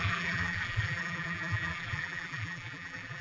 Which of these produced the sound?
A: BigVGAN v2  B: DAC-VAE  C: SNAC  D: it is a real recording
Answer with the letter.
A